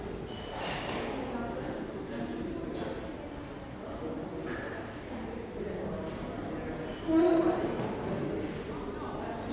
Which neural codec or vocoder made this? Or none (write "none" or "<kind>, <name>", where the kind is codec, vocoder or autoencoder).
none